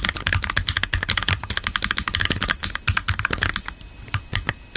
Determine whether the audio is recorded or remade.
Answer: recorded